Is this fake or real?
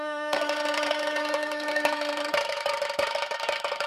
fake